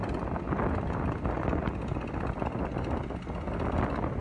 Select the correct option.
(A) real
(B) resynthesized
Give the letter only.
A